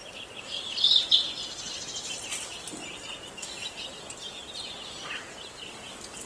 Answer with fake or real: real